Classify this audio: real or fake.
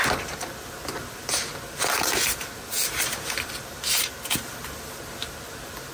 real